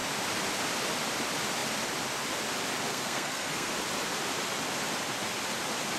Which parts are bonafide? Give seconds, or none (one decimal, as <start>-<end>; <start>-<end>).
0.0-2.9; 3.7-6.0